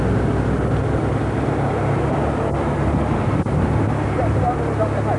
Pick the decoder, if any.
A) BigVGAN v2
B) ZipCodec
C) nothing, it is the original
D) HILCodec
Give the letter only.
C